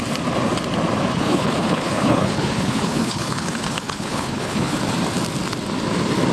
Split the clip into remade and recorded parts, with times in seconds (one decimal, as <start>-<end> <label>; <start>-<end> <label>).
0.0-1.1 recorded; 1.1-4.8 remade; 4.8-6.3 recorded